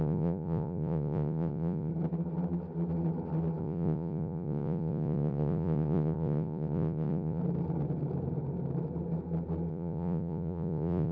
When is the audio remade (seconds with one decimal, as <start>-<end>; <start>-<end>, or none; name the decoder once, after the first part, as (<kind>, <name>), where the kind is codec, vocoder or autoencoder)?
0.0-1.9 (vocoder, Vocos); 3.6-7.4; 9.7-11.1